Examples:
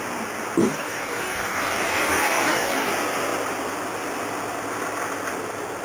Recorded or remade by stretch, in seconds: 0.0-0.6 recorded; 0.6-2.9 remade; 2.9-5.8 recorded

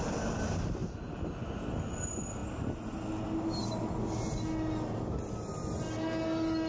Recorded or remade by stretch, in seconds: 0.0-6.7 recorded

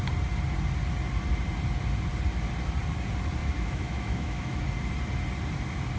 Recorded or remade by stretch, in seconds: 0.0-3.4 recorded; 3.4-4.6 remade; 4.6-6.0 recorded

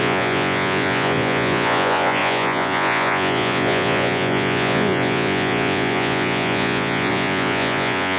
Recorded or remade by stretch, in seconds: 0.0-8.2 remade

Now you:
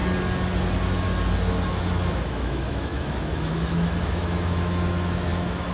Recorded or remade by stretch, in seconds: 0.0-2.1 recorded; 2.1-5.7 remade

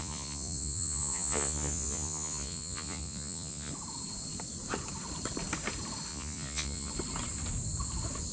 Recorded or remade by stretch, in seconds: 0.0-3.7 remade; 3.7-6.1 recorded; 6.1-6.9 remade; 6.9-8.3 recorded

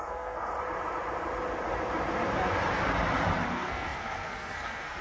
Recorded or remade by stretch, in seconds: 0.0-0.5 remade; 0.5-3.5 recorded; 3.5-5.0 remade

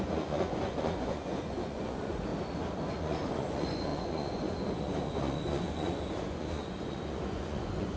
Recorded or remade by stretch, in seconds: 0.0-2.3 remade; 2.3-3.0 recorded; 3.0-8.0 remade